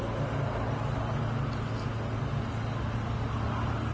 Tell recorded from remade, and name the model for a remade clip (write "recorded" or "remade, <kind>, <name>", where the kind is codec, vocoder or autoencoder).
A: recorded